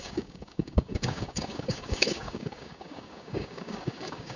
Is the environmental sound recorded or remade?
remade